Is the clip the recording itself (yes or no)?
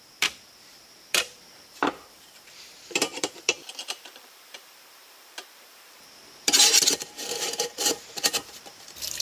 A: no